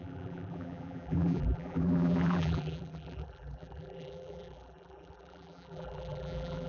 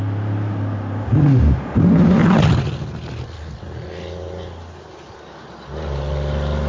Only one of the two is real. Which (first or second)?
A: second